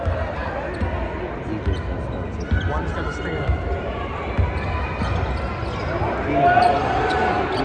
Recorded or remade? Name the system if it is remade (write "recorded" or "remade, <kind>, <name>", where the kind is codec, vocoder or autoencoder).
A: recorded